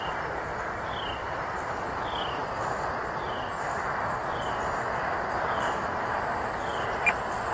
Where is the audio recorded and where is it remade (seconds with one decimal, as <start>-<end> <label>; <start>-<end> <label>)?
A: 0.0-2.4 remade; 2.4-3.2 recorded; 3.2-4.6 remade; 4.6-5.1 recorded; 5.1-6.7 remade; 6.7-7.5 recorded